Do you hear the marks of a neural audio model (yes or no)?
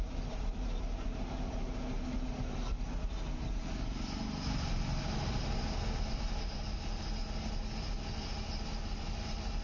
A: no